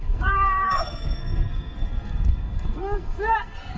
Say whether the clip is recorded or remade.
remade